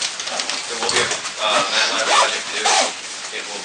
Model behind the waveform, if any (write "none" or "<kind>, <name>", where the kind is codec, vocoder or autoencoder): none